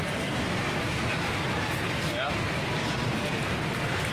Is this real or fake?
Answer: real